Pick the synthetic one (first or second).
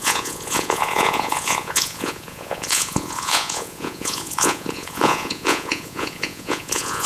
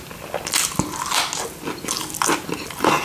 first